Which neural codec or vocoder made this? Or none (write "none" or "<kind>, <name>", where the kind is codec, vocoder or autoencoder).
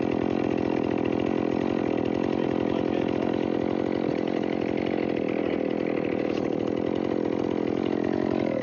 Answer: none